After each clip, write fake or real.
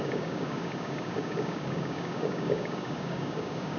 fake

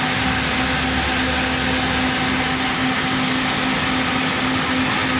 real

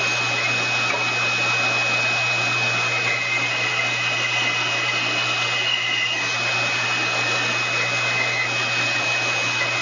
real